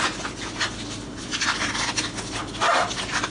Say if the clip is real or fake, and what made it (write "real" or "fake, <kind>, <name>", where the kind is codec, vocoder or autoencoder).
real